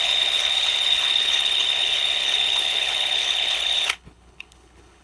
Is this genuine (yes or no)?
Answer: no